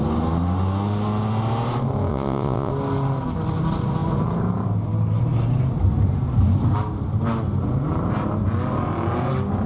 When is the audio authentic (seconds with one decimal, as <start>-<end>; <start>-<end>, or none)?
0.0-2.1; 2.7-9.7